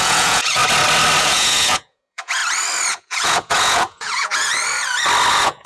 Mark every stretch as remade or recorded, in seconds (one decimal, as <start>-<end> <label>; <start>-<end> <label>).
0.0-0.6 remade; 0.6-1.2 recorded; 1.2-2.4 remade; 2.4-2.9 recorded; 2.9-4.5 remade; 4.5-5.3 recorded; 5.3-5.7 remade